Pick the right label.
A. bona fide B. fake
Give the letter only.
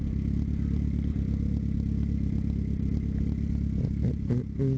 A